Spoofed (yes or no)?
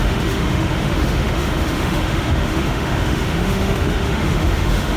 yes